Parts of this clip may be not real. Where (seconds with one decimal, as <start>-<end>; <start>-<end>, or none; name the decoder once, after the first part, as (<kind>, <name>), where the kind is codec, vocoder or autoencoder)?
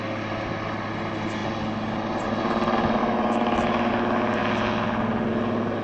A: 3.0-3.9 (autoencoder, DAC-VAE)